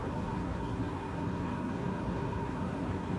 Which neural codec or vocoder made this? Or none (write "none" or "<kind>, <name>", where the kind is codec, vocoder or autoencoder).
codec, SNAC